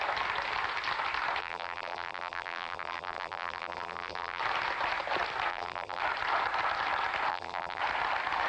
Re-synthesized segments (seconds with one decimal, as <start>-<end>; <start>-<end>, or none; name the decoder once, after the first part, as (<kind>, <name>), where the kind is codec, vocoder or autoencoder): 1.4-4.4 (vocoder, BigVGAN v2); 5.5-6.0; 7.3-7.8